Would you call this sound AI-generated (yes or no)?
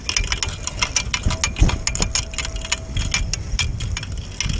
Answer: no